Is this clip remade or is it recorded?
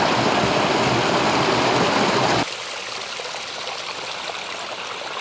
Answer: recorded